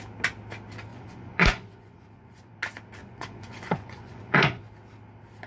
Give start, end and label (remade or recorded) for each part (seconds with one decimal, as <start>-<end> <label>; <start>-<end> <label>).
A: 0.0-0.9 recorded; 0.9-2.5 remade; 2.5-3.0 recorded; 3.0-4.6 remade; 4.6-5.5 recorded